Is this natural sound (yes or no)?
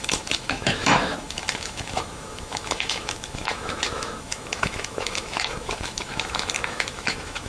no